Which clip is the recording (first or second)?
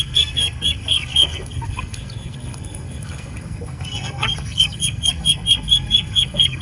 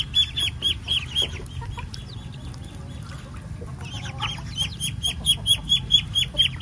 second